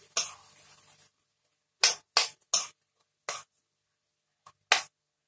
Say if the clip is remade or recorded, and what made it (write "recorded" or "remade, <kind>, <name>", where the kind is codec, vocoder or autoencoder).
recorded